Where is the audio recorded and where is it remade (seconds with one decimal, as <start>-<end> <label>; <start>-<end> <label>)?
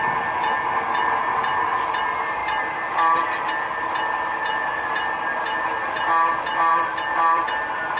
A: 0.0-2.4 recorded; 2.4-3.5 remade; 3.5-6.7 recorded; 6.7-7.5 remade; 7.5-8.0 recorded